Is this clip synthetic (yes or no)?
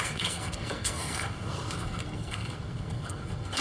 yes